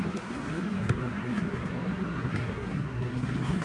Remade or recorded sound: remade